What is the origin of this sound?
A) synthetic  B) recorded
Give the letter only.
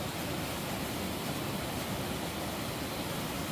B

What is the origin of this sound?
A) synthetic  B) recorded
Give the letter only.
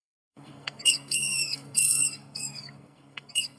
A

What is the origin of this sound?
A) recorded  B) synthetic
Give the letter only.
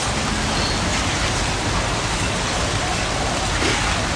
A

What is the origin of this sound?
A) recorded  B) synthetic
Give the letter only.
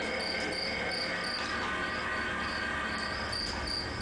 A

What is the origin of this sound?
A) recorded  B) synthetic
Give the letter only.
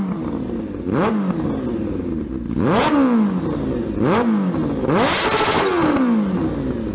A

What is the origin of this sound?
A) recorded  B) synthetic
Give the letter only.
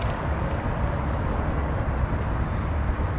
A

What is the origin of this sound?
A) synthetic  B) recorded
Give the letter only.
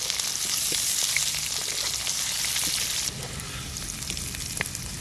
B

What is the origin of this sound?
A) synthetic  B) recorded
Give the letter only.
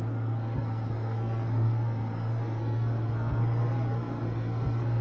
A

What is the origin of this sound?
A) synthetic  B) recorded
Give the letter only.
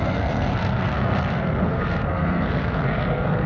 A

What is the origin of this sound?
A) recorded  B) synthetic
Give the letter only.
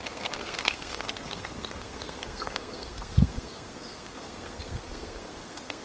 B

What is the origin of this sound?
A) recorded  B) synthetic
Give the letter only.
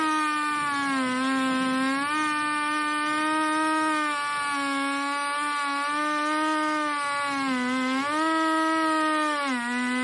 A